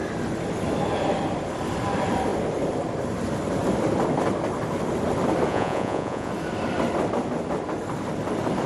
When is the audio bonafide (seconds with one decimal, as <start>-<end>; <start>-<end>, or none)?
0.0-5.5; 6.3-8.7